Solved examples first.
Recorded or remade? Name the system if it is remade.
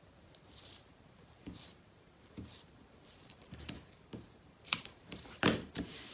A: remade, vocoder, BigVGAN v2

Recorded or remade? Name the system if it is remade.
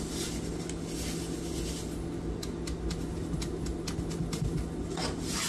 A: recorded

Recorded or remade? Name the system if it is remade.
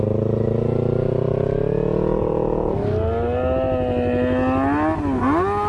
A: recorded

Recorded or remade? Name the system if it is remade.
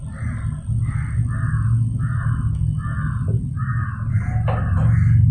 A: recorded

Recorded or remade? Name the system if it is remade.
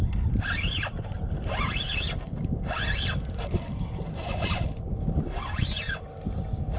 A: recorded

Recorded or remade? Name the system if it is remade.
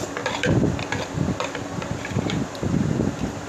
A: remade, vocoder, BigVGAN v2